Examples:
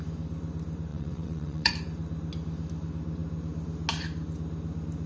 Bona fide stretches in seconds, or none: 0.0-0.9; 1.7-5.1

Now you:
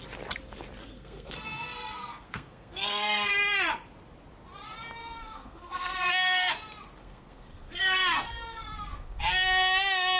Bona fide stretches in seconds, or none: 0.0-0.8; 3.3-5.0; 6.5-7.0; 9.2-10.2

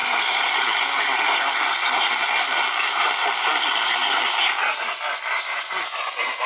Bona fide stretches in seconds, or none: 0.0-6.5

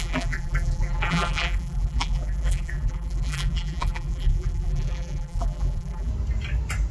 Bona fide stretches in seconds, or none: 6.1-6.9